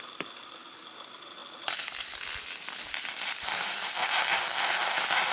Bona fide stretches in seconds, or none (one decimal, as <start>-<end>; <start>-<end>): 0.0-5.3